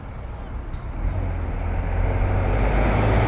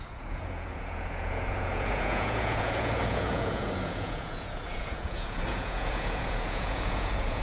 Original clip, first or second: first